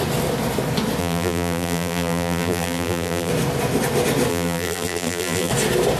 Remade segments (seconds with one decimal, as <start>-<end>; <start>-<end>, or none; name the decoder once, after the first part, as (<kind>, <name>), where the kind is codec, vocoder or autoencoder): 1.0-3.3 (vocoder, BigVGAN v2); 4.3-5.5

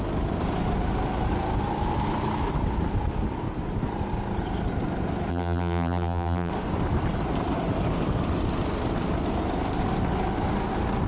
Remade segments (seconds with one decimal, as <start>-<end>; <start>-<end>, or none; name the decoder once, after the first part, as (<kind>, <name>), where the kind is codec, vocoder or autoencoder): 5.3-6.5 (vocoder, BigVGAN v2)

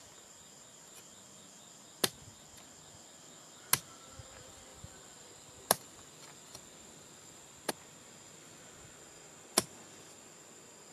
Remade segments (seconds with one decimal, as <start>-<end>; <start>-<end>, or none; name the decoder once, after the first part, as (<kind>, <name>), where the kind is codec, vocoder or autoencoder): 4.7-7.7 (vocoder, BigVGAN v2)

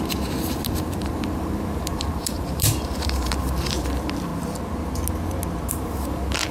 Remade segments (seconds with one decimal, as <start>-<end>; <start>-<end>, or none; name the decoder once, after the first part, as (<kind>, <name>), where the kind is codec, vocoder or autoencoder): 0.0-4.3 (vocoder, BigVGAN v2); 5.7-6.5